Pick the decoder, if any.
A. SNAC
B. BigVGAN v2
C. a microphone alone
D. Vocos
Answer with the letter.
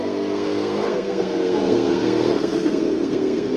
A